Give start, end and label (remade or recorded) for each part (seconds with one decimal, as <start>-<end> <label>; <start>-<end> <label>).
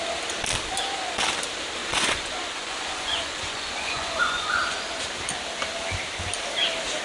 0.0-1.8 recorded; 1.8-5.0 remade; 5.0-7.0 recorded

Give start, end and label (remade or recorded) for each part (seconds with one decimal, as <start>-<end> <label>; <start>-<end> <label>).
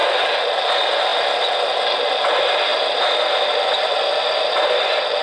0.0-0.6 remade; 0.6-5.2 recorded